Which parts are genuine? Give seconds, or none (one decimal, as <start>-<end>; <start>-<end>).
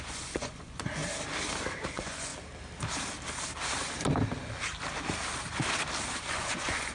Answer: 1.0-1.9; 2.3-6.2